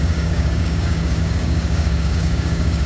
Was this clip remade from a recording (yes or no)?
yes